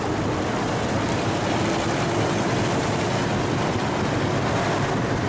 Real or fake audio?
real